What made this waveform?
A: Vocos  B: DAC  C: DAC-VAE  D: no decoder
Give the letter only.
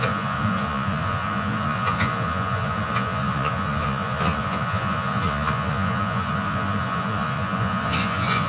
A